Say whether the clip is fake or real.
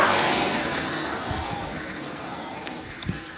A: fake